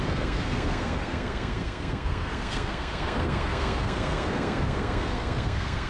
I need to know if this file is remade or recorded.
remade